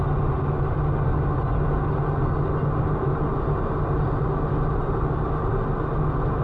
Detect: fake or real real